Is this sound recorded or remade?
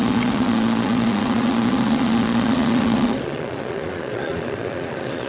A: remade